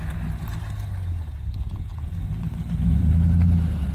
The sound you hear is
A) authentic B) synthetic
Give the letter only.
A